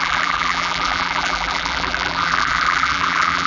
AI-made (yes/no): yes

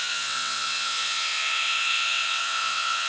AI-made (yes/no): yes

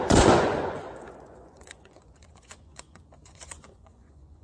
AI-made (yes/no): yes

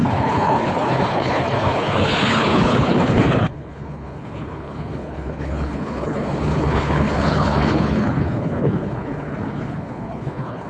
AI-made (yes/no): yes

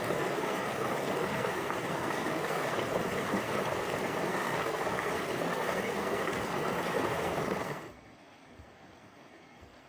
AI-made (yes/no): yes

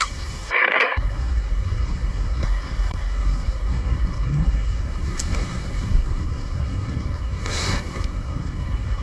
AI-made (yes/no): yes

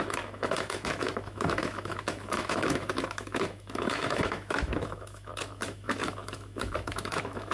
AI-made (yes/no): yes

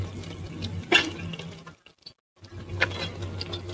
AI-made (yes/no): no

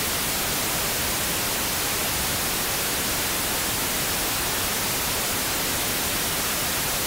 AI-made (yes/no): no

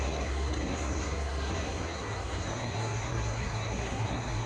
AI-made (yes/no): yes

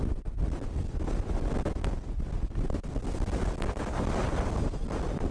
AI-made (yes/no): no